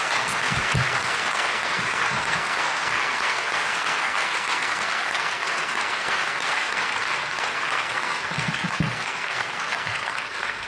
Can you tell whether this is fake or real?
fake